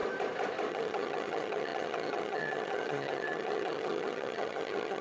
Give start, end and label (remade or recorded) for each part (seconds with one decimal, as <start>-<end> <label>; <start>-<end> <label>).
0.0-0.7 recorded; 0.7-5.0 remade